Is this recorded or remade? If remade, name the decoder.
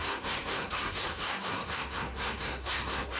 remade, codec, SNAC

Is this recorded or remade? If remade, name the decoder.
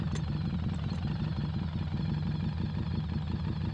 recorded